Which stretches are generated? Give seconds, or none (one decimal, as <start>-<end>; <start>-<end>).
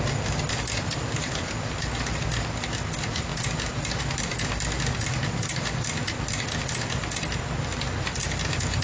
none